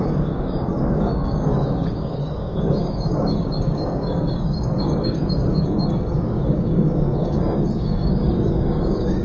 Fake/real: fake